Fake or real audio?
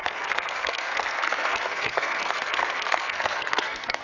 fake